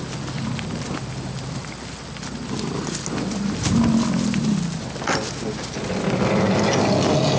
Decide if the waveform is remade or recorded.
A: recorded